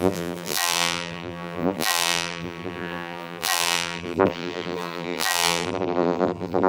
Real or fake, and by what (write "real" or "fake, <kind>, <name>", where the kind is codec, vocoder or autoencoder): fake, vocoder, BigVGAN v2